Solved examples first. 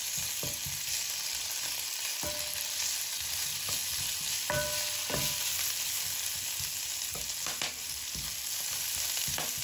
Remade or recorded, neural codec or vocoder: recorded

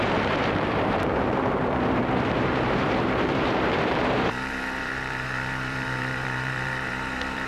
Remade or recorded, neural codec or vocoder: remade, vocoder, BigVGAN v2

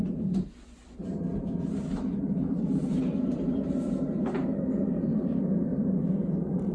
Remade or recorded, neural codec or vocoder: remade, vocoder, BigVGAN v2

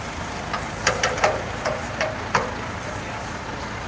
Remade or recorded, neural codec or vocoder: remade, vocoder, BigVGAN v2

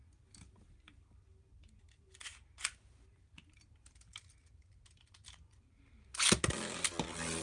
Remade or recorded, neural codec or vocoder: recorded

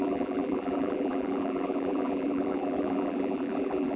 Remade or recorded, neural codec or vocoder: remade, vocoder, BigVGAN v2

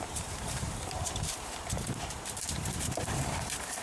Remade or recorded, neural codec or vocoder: remade, vocoder, BigVGAN v2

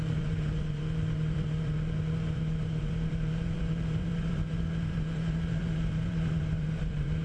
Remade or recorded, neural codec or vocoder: remade, vocoder, BigVGAN v2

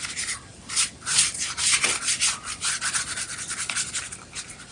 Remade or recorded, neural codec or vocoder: remade, vocoder, BigVGAN v2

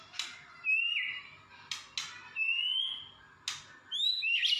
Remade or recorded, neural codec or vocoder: recorded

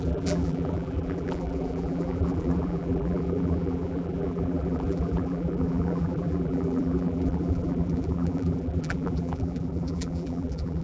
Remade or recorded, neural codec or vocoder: remade, vocoder, BigVGAN v2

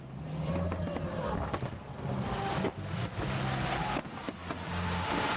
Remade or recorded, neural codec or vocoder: recorded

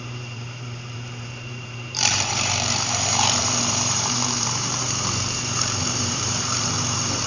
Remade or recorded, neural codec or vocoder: remade, vocoder, BigVGAN v2